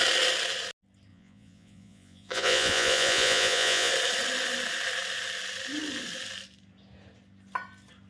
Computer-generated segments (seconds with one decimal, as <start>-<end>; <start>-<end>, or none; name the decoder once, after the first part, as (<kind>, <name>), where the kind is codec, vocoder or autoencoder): 1.1-3.9 (vocoder, Vocos)